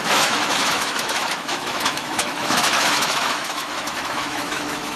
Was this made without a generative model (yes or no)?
no